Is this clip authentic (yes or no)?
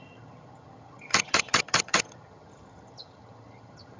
no